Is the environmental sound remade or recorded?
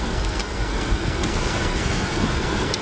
remade